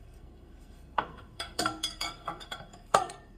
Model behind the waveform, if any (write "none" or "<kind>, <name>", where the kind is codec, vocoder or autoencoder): codec, SNAC